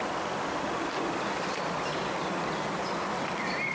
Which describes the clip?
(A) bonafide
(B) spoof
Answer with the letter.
A